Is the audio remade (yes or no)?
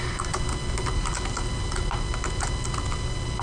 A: no